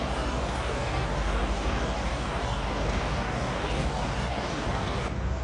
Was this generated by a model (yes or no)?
yes